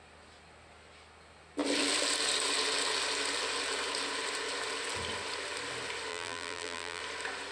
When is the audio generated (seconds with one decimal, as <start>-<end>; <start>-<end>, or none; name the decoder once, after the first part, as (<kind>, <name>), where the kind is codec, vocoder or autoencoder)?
6.1-7.0 (vocoder, BigVGAN v2)